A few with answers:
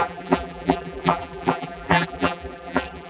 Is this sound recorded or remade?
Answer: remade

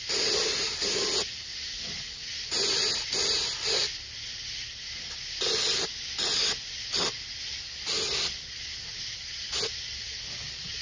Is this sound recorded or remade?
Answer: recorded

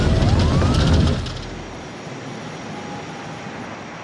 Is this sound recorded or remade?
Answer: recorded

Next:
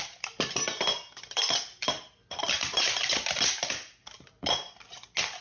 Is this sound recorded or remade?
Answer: recorded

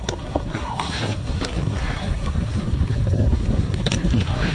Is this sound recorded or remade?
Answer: remade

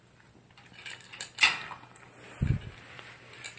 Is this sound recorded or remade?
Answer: remade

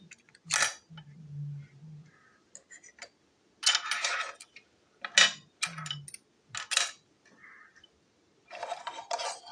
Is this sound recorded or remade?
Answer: recorded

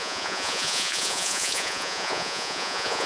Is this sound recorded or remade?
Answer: remade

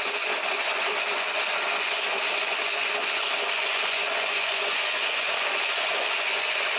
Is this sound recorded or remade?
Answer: remade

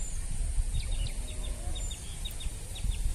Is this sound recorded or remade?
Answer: recorded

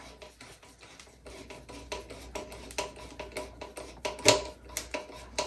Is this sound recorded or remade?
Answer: recorded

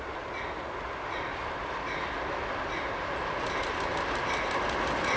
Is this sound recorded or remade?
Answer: recorded